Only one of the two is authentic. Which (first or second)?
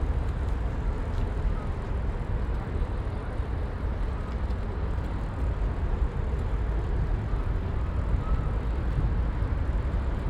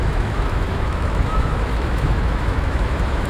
first